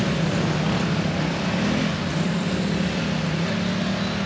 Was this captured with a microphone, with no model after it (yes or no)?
yes